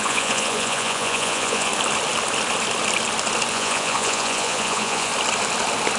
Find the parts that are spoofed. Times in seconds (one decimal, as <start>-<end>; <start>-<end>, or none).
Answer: 0.0-1.7; 3.5-5.1